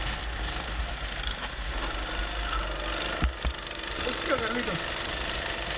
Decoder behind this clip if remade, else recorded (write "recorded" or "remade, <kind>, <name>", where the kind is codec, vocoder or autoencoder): recorded